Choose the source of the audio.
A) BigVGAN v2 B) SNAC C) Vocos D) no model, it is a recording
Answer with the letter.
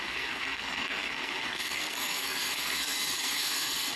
B